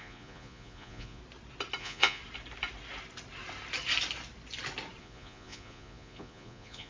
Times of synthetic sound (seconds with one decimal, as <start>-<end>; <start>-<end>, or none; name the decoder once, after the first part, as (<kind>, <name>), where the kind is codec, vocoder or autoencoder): 0.0-1.2 (vocoder, Vocos); 1.8-2.2; 5.0-6.9